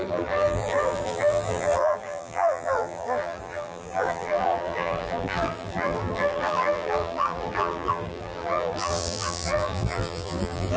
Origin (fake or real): fake